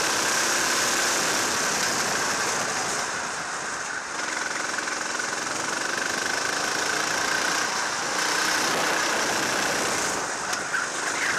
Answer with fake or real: real